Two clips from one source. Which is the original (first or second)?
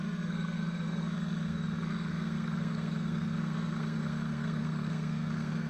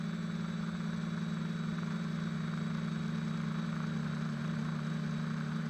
second